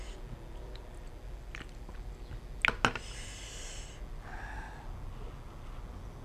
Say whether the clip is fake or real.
real